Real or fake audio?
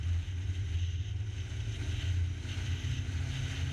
real